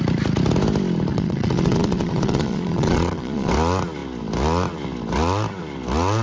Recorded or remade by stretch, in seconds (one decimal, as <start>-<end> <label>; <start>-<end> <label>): 0.0-1.1 recorded; 1.1-3.5 remade; 3.5-6.2 recorded